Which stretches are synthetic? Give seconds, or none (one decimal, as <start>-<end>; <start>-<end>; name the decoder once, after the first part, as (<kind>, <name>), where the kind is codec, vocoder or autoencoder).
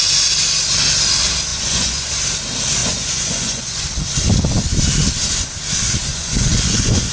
1.5-2.1 (vocoder, Vocos); 2.8-3.8; 6.1-7.1